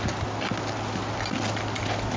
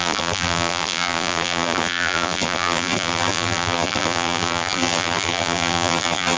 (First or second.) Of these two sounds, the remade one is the second